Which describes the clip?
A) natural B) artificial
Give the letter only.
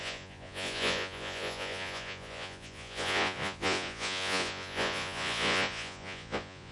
B